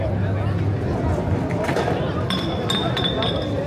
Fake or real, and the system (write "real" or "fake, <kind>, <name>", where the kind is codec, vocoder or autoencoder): real